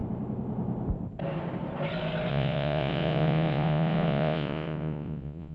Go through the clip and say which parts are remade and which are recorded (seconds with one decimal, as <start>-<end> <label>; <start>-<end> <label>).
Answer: 0.0-2.3 recorded; 2.3-5.5 remade